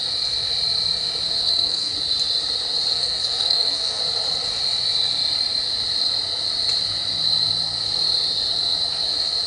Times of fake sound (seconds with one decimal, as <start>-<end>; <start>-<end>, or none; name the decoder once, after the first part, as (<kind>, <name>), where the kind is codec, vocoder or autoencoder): 1.4-1.9 (codec, SNAC); 2.9-4.0